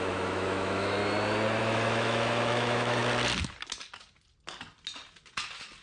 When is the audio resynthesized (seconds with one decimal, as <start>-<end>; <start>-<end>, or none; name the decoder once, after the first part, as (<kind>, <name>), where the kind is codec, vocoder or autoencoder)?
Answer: 0.0-1.0 (autoencoder, DAC-VAE); 1.6-3.0